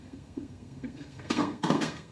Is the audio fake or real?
fake